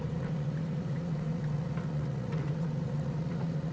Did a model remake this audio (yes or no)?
yes